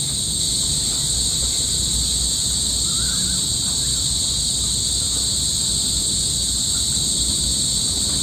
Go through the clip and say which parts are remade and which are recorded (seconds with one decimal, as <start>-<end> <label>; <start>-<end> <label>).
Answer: 0.0-8.2 recorded